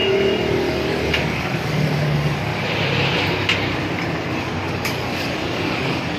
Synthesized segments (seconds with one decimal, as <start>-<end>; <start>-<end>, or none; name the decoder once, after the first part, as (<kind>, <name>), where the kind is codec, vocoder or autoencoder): 0.5-2.5 (codec, DAC); 4.4-6.2